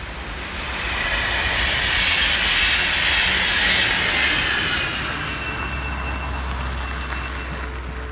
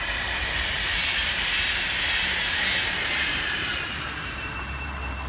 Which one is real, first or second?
first